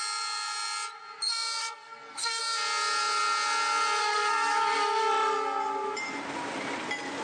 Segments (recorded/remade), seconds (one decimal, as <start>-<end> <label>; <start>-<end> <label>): 0.0-1.6 recorded; 1.6-2.4 remade; 2.4-4.0 recorded; 4.0-5.1 remade; 5.1-7.2 recorded